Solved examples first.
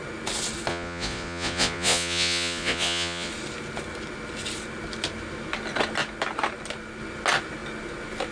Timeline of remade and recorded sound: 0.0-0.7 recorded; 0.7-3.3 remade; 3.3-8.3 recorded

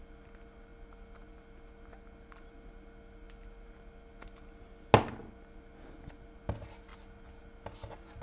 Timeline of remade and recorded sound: 0.0-8.2 recorded

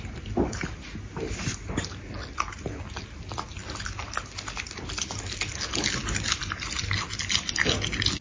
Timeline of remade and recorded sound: 0.0-8.2 recorded

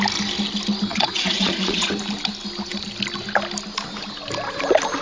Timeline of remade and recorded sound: 0.0-0.9 recorded; 0.9-1.9 remade; 1.9-5.0 recorded

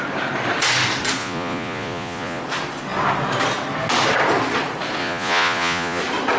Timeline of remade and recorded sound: 0.0-1.2 recorded; 1.2-2.4 remade; 2.4-5.0 recorded; 5.0-6.0 remade; 6.0-6.4 recorded